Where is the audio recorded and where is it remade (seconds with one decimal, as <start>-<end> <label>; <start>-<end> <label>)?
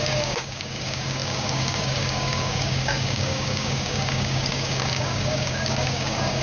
0.0-6.4 remade